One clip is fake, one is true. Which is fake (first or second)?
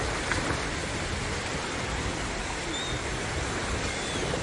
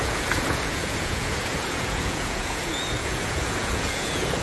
second